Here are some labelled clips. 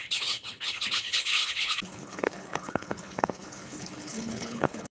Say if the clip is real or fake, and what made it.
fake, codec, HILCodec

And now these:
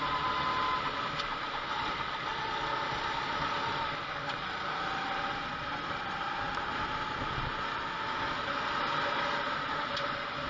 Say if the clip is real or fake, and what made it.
real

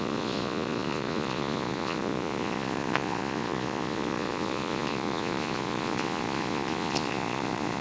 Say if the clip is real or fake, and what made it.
fake, vocoder, Vocos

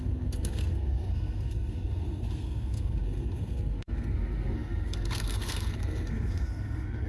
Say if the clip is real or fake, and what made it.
fake, codec, SNAC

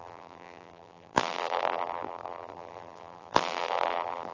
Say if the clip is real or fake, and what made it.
fake, vocoder, BigVGAN v2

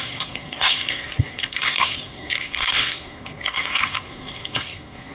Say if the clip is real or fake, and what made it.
fake, codec, SNAC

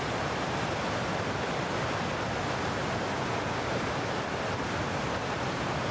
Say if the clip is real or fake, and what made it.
real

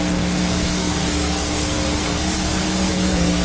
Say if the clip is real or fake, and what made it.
fake, codec, SNAC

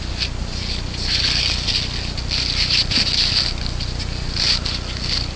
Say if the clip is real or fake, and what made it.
real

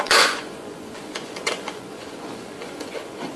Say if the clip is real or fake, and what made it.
fake, vocoder, Vocos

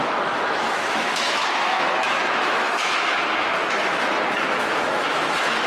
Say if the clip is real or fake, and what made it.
fake, autoencoder, DAC-VAE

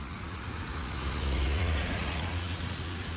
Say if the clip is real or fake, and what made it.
fake, vocoder, Vocos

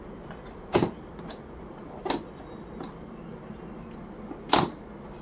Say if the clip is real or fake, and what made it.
real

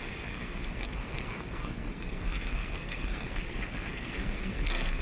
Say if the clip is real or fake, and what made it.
fake, codec, SNAC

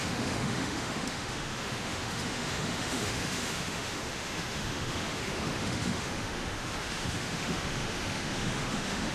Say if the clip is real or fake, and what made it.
fake, autoencoder, DAC-VAE